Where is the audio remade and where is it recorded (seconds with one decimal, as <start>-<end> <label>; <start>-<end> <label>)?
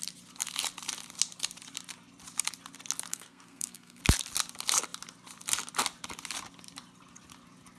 0.0-3.1 recorded; 3.1-4.0 remade; 4.0-7.8 recorded